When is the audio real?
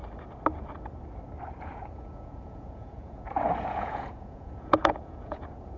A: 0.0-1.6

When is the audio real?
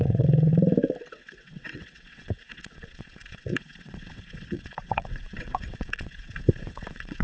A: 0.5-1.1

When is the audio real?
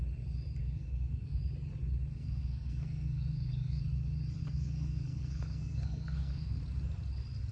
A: 0.0-0.6; 1.4-2.1; 3.8-4.4; 6.6-7.5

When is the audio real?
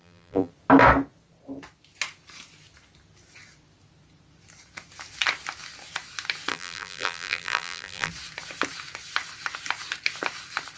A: 0.5-6.5; 8.1-10.8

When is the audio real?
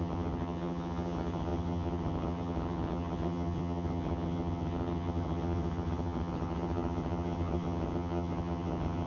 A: none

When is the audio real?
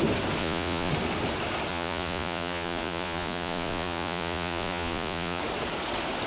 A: 0.0-0.4; 0.9-1.7; 5.4-6.3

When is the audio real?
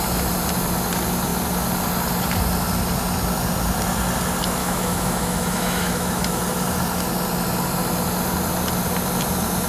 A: 0.0-4.6; 6.4-9.7